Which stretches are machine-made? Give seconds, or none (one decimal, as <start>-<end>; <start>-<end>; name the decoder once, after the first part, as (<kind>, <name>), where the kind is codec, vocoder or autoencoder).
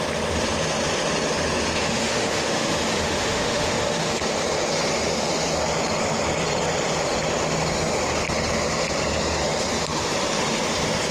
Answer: 1.8-4.2 (autoencoder, DAC-VAE)